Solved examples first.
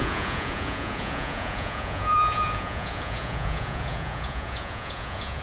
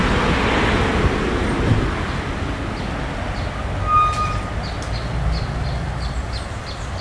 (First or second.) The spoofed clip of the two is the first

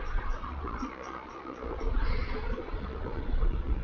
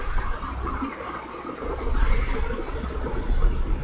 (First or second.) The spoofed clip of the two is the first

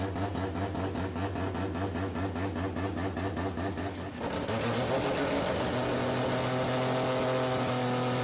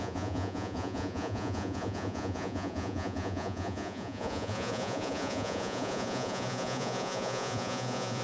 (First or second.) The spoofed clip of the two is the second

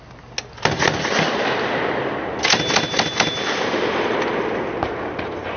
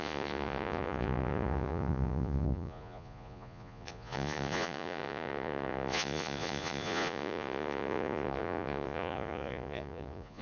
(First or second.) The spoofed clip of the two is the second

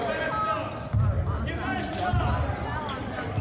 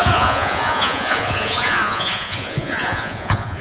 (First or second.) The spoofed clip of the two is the second